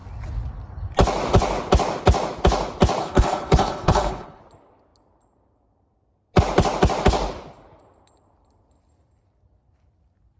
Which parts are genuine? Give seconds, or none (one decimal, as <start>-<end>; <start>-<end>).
0.0-3.0; 4.4-10.4